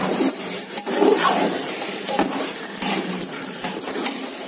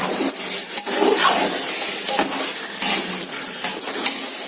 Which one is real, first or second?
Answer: second